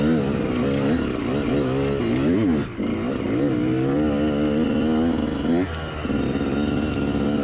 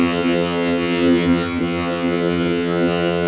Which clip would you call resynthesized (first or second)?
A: second